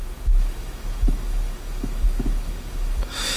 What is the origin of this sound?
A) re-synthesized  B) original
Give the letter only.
A